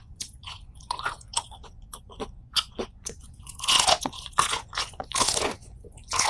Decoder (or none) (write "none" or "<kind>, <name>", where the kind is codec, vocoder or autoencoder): vocoder, Vocos